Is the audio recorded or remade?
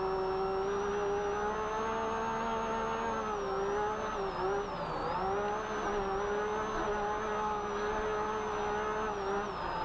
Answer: recorded